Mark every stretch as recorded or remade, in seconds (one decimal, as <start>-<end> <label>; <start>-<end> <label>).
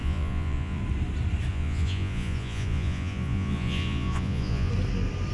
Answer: 0.0-0.8 remade; 0.8-1.5 recorded; 1.5-4.7 remade; 4.7-5.3 recorded